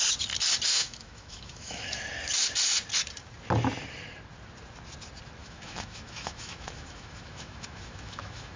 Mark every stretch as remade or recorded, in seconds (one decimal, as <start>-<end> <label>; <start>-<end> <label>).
0.0-0.7 recorded; 0.7-2.0 remade; 2.0-5.4 recorded; 5.4-8.6 remade